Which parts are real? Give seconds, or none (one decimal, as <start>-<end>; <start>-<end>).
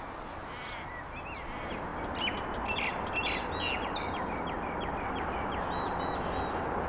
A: 0.0-6.9